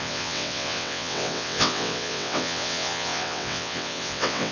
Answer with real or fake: fake